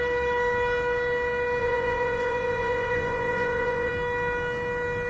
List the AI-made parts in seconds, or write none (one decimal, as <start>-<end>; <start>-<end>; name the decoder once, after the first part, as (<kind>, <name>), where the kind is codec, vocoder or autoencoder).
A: 1.6-3.9 (vocoder, Vocos)